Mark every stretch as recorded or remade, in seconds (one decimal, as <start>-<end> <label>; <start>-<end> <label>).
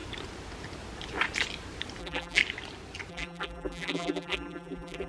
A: 0.0-2.0 recorded; 2.0-2.4 remade; 2.4-3.1 recorded; 3.1-5.1 remade